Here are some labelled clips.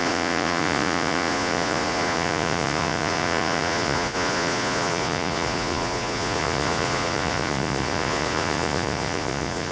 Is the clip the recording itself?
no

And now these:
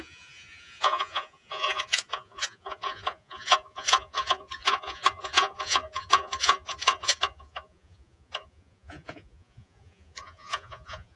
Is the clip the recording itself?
no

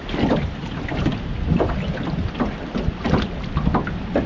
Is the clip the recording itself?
yes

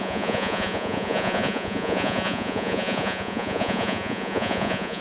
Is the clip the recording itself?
no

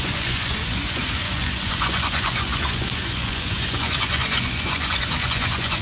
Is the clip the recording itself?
no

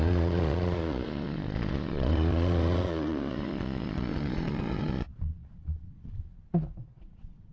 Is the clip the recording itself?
no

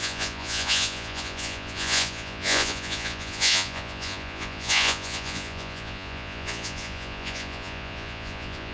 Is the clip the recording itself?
no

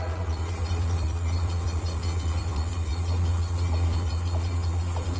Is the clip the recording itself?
no